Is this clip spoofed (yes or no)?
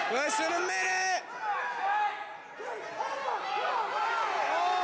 no